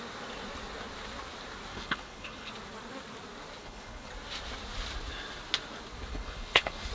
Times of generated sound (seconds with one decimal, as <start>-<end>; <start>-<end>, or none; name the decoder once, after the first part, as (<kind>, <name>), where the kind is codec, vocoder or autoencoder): 1.7-2.5 (codec, HILCodec); 3.6-4.1; 6.1-6.9